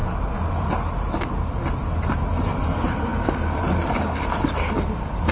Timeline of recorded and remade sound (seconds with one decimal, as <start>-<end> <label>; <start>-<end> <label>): 0.0-5.3 recorded